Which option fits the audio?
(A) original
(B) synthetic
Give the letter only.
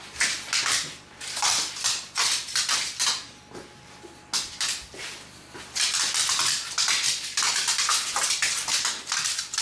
A